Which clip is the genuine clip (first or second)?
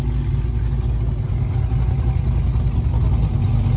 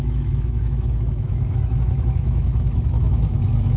first